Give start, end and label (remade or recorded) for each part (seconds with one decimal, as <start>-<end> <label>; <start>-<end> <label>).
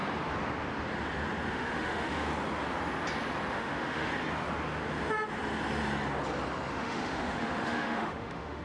0.0-1.5 recorded; 1.5-2.3 remade; 2.3-3.5 recorded; 3.5-4.1 remade; 4.1-6.7 recorded; 6.7-8.6 remade